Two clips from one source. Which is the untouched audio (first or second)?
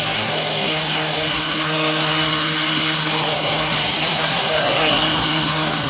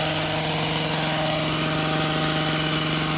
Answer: second